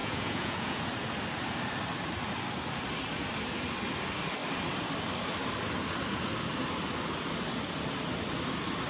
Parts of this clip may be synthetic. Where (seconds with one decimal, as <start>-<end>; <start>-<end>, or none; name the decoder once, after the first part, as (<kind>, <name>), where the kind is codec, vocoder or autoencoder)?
0.0-0.8 (vocoder, Vocos)